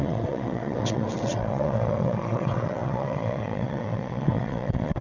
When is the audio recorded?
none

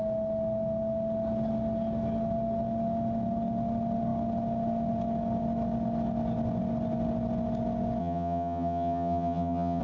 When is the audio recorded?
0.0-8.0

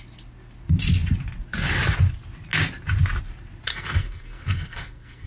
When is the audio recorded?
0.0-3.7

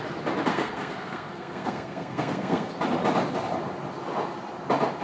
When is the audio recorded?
0.0-0.5; 2.7-5.0

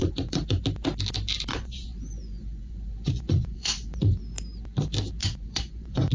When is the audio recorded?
0.6-1.5; 4.2-5.2